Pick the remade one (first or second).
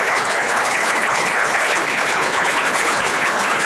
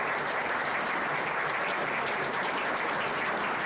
first